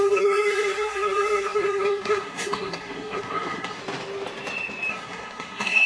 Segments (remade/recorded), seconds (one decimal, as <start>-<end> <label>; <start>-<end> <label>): 0.0-3.8 remade; 3.8-4.9 recorded; 4.9-5.9 remade